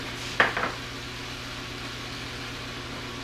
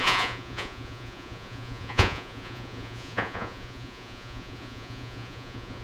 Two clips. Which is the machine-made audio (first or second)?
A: second